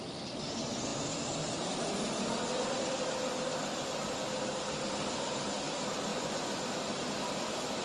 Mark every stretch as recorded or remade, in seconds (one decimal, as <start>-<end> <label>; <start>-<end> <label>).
0.0-6.1 recorded; 6.1-6.7 remade; 6.7-7.8 recorded